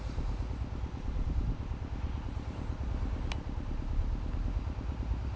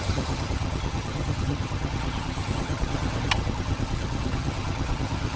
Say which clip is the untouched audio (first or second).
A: first